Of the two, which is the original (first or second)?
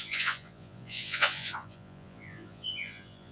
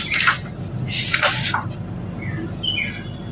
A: second